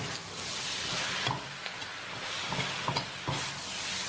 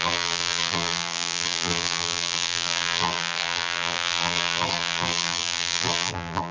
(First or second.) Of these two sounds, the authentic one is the first